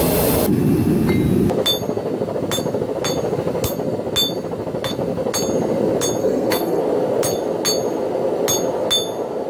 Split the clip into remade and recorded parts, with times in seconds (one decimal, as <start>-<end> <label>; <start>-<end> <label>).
0.0-6.2 recorded; 6.2-6.8 remade; 6.8-9.5 recorded